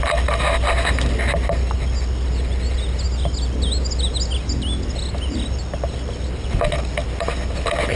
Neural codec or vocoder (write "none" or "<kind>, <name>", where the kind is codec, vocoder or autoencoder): none